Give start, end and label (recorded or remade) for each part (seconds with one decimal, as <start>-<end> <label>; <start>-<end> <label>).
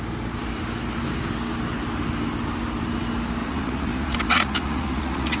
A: 0.0-3.4 recorded; 3.4-5.4 remade